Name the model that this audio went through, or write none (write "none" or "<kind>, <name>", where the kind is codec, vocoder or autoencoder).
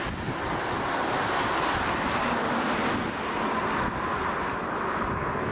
none